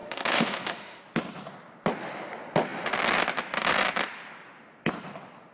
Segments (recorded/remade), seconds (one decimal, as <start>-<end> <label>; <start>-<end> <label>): 0.0-1.0 remade; 1.0-5.5 recorded